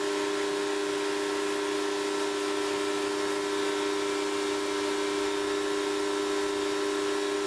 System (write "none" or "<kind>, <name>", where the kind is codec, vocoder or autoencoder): none